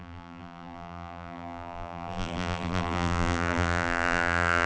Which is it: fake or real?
fake